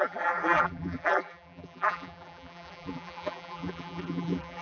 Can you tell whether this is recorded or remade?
remade